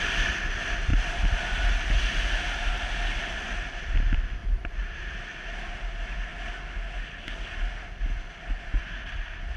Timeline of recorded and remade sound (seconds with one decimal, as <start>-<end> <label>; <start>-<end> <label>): 0.0-0.9 recorded; 0.9-1.4 remade; 1.4-4.4 recorded; 4.4-5.4 remade; 5.4-9.6 recorded